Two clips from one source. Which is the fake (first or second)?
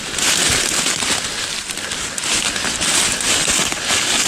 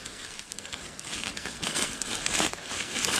second